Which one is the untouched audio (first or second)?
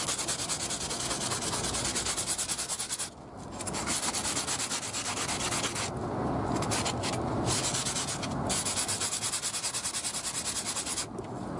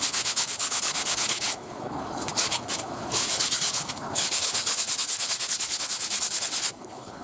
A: first